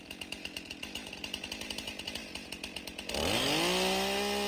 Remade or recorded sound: recorded